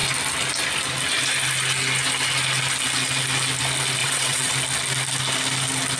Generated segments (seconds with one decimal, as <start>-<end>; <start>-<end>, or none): 4.0-4.5